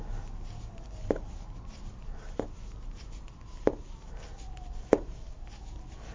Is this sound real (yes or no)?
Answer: yes